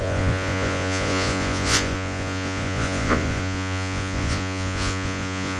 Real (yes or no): no